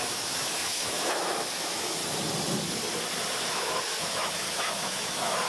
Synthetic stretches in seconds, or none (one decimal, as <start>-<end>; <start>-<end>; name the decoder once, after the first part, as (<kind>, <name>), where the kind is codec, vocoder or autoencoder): 0.0-2.0 (autoencoder, DAC-VAE); 3.5-5.5